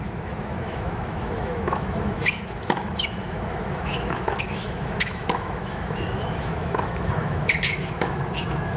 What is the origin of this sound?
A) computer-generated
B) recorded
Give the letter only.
A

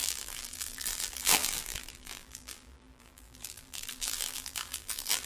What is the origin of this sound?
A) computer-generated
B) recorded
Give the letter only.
A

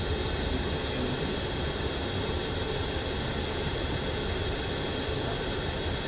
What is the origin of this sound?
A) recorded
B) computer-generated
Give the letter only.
A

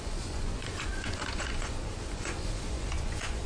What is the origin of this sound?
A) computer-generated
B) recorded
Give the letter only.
A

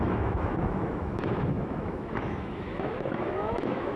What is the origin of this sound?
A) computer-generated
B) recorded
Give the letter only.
A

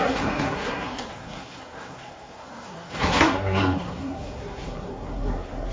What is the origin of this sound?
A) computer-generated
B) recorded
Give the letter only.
A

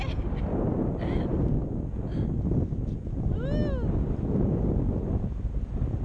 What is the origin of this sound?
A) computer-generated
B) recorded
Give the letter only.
B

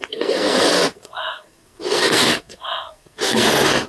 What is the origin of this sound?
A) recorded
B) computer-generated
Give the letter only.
B